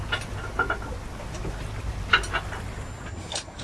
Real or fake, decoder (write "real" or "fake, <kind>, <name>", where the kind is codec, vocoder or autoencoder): real